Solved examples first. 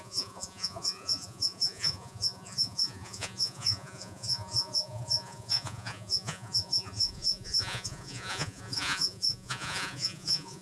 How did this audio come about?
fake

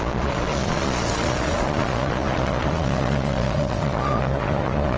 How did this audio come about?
fake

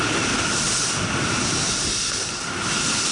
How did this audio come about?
real